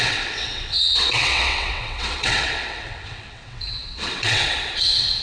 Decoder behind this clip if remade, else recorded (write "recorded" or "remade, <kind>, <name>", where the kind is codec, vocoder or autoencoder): remade, vocoder, WaveNeXt